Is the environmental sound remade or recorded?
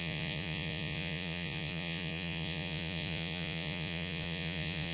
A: remade